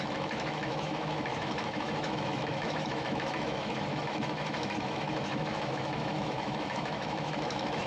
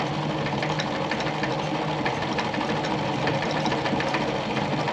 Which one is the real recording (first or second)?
second